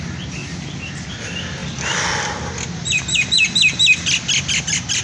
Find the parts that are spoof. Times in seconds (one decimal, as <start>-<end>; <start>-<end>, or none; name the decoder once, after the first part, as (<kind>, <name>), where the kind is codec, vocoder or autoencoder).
none